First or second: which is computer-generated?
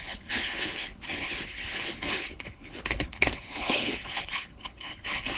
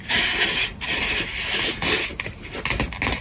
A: first